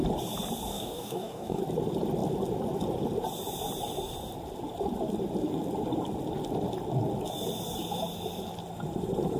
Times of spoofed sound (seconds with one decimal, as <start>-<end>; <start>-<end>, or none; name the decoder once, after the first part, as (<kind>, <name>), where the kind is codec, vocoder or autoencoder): 0.7-1.6 (codec, DAC)